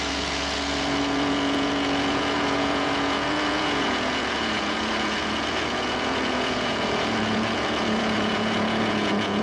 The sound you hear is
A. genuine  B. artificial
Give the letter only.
B